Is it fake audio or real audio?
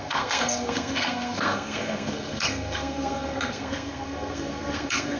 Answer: fake